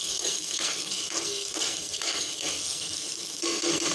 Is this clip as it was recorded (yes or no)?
no